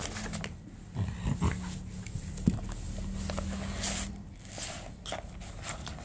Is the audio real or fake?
real